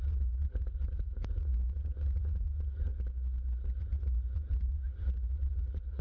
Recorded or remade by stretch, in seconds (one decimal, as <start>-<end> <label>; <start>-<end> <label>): 0.0-2.9 remade; 2.9-3.8 recorded; 3.8-6.0 remade